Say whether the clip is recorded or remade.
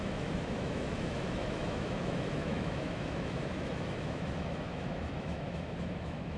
remade